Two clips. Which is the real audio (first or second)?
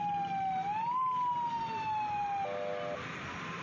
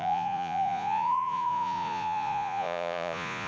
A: first